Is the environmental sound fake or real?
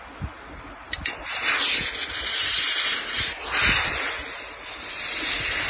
real